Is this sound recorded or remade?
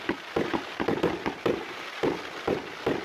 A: recorded